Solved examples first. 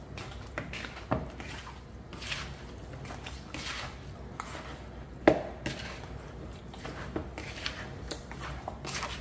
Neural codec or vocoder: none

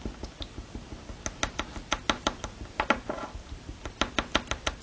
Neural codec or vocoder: none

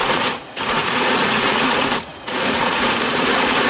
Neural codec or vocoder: vocoder, Vocos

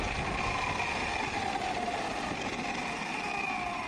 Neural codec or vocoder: none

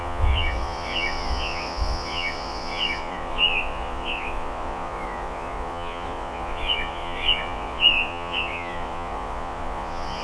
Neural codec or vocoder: vocoder, Vocos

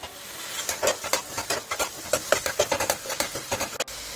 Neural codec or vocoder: none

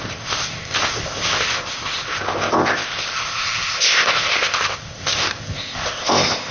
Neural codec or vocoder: codec, ZipCodec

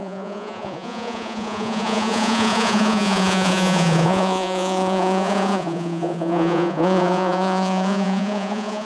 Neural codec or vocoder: vocoder, Vocos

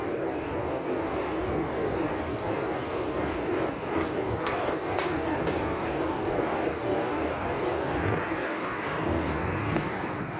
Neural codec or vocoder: codec, DAC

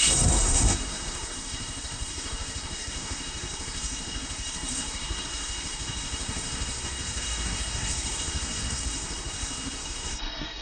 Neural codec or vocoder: codec, SNAC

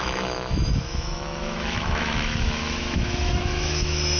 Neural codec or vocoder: autoencoder, DAC-VAE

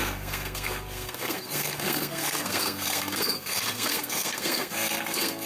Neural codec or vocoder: codec, SNAC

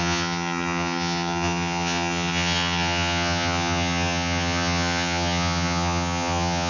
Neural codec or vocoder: vocoder, HiFi-GAN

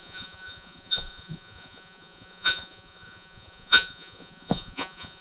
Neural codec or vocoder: vocoder, Vocos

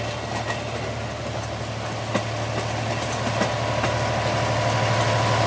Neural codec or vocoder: none